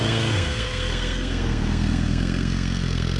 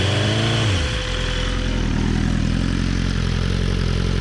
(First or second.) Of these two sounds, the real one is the second